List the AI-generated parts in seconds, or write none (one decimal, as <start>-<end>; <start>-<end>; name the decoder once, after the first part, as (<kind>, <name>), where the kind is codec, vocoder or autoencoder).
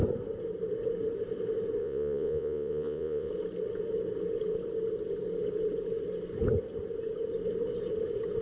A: 1.8-3.3 (vocoder, Vocos)